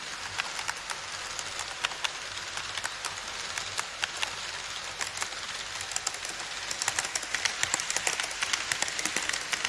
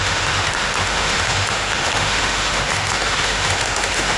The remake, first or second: second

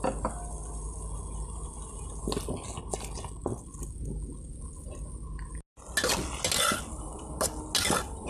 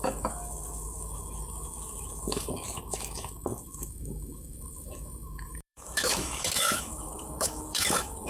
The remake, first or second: second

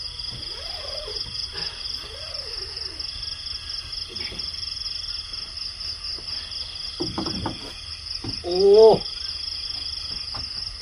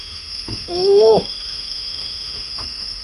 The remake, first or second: second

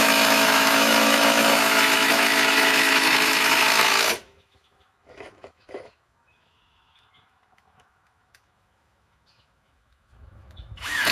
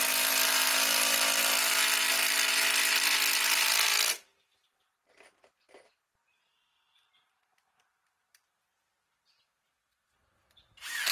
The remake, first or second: first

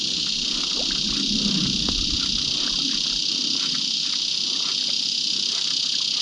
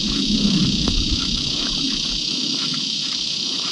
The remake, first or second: second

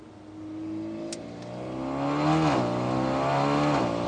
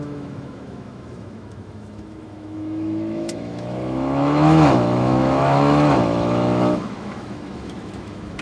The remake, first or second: second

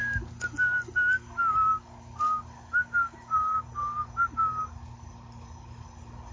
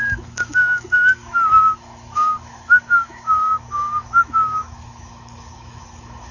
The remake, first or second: second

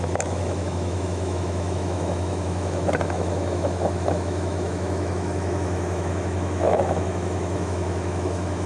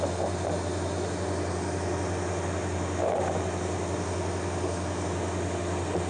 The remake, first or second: first